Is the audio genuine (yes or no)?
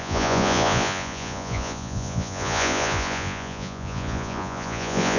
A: no